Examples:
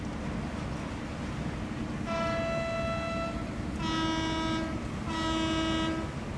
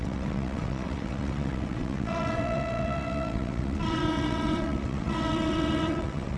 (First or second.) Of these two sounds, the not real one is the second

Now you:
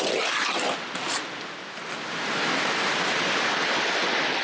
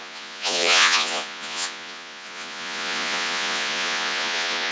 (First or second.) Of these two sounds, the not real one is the second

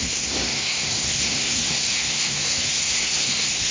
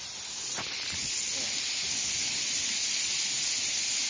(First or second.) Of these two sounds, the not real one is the first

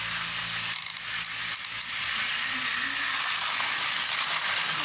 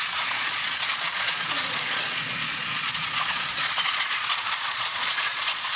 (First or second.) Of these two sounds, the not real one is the second